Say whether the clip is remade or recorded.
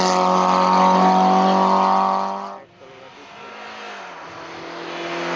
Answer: recorded